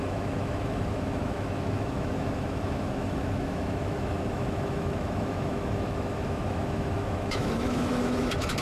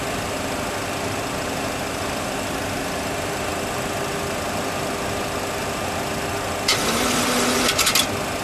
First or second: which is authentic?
second